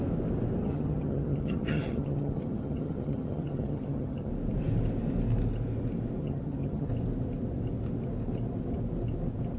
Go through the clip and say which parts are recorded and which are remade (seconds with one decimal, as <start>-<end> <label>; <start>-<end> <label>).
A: 0.0-0.6 recorded; 0.6-4.3 remade; 4.3-6.2 recorded; 6.2-6.9 remade; 6.9-9.6 recorded